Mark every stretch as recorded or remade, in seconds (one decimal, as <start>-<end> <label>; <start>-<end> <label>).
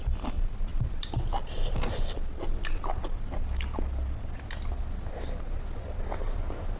0.0-6.8 recorded